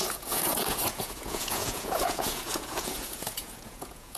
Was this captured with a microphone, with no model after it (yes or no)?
no